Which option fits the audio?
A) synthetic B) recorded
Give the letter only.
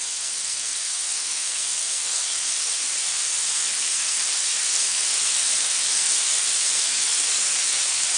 A